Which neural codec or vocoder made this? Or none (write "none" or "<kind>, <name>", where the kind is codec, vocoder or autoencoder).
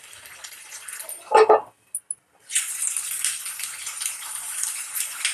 none